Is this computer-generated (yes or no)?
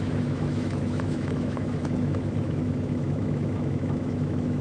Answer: yes